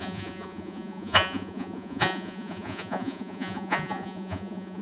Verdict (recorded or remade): remade